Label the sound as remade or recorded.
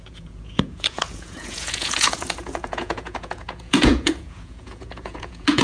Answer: remade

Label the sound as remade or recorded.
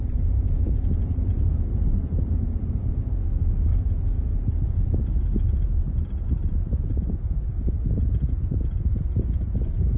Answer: remade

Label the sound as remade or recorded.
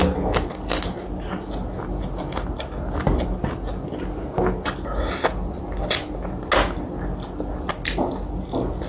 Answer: recorded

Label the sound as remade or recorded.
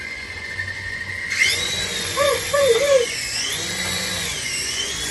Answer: remade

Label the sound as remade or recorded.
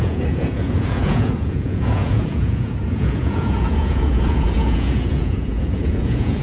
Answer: remade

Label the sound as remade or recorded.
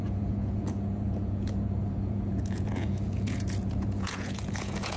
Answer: remade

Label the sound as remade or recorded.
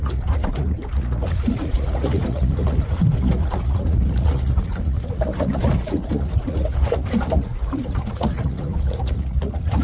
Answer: remade